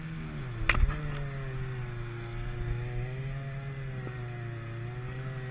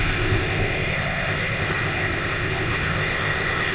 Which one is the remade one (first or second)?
second